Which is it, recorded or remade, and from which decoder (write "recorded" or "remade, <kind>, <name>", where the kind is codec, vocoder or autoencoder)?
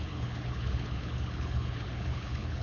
remade, codec, HILCodec